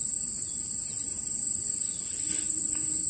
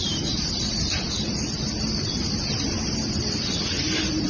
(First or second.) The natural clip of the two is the first